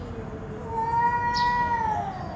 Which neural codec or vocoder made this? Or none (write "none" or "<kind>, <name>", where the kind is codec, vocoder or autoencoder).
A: none